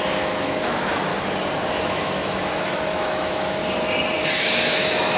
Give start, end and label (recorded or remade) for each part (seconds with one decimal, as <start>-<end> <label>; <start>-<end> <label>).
0.0-1.1 remade; 1.1-1.7 recorded; 1.7-3.6 remade; 3.6-4.2 recorded; 4.2-5.2 remade

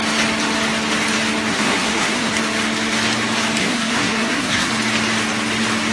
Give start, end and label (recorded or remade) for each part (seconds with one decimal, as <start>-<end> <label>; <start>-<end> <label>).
0.0-1.5 recorded; 1.5-2.3 remade; 2.3-3.6 recorded; 3.6-4.7 remade; 4.7-5.9 recorded

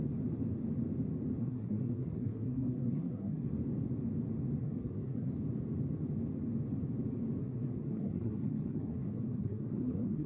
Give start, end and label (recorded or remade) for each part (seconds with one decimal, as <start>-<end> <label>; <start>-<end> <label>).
0.0-1.4 recorded; 1.4-3.5 remade; 3.5-4.6 recorded; 4.6-5.3 remade; 5.3-7.4 recorded; 7.4-10.3 remade

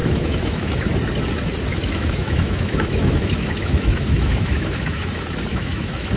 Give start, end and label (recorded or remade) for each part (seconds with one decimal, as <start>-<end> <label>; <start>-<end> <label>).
0.0-0.7 remade; 0.7-1.7 recorded; 1.7-5.1 remade; 5.1-5.5 recorded; 5.5-6.2 remade

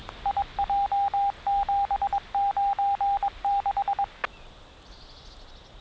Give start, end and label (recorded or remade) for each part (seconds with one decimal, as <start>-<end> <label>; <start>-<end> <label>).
0.0-5.8 recorded

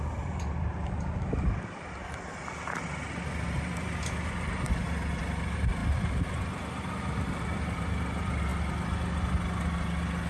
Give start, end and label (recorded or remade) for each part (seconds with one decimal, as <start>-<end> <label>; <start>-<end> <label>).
0.0-8.5 remade; 8.5-10.3 recorded

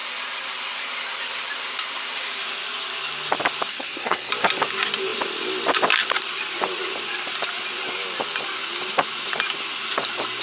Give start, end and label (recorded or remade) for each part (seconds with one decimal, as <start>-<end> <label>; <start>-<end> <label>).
0.0-3.7 recorded; 3.7-4.3 remade; 4.3-10.4 recorded

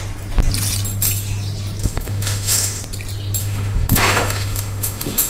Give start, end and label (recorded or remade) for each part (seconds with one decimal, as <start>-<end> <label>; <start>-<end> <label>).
0.0-1.8 recorded; 1.8-2.8 remade; 2.8-3.4 recorded; 3.4-5.3 remade